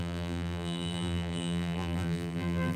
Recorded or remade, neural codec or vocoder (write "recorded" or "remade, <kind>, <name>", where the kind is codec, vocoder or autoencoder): remade, vocoder, BigVGAN v2